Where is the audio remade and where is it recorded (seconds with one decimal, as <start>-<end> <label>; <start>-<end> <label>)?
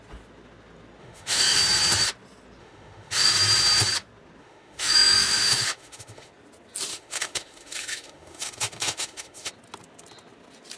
0.0-1.0 recorded; 1.0-1.6 remade; 1.6-2.6 recorded; 2.6-3.3 remade; 3.3-4.4 recorded; 4.4-6.3 remade; 6.3-6.9 recorded; 6.9-9.5 remade; 9.5-10.8 recorded